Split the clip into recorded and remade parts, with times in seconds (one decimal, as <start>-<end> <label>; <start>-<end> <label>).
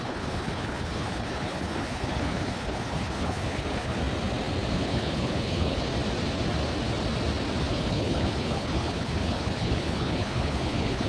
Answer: 0.0-4.0 remade; 4.0-4.7 recorded; 4.7-5.9 remade; 5.9-7.7 recorded; 7.7-11.1 remade